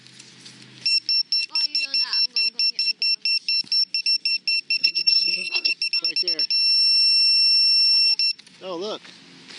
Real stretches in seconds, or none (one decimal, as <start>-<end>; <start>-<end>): 0.0-4.8; 5.7-9.6